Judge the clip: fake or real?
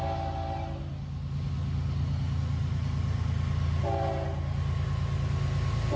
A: real